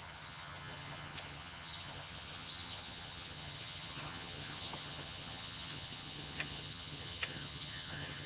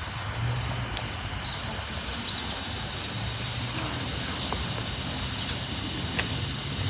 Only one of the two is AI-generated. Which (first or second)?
first